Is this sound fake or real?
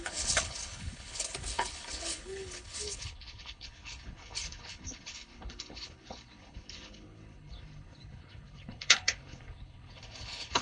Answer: fake